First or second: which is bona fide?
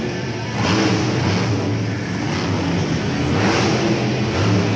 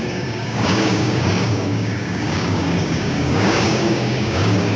first